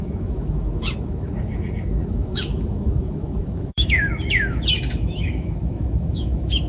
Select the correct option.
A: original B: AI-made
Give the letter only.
B